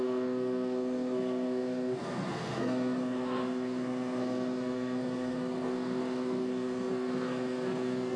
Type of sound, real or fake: fake